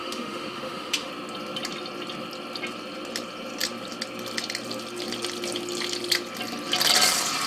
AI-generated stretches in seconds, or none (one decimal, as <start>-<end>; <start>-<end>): 0.0-1.1